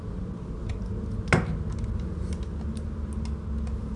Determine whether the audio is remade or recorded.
recorded